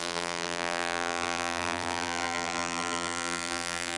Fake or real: fake